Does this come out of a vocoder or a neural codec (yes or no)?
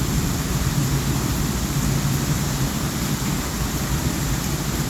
yes